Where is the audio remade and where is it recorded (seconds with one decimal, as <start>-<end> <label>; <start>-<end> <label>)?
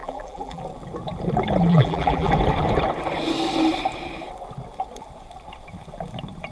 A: 0.0-0.6 remade; 0.6-1.7 recorded; 1.7-2.3 remade; 2.3-6.5 recorded